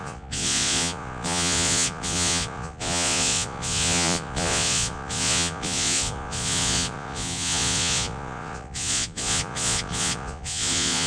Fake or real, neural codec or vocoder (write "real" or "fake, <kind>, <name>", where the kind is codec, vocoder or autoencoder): fake, vocoder, Vocos